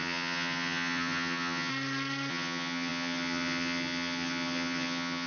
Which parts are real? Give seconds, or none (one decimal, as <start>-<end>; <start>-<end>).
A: 1.7-2.3